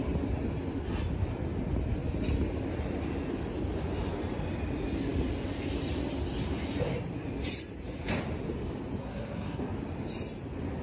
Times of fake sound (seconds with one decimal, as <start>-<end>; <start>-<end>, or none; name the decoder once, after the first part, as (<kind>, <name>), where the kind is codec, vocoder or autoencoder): 9.0-9.7 (codec, SNAC)